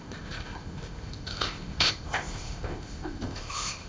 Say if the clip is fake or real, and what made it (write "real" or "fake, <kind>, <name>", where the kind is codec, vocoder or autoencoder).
fake, codec, ZipCodec